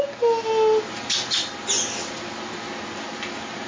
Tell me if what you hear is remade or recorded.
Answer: recorded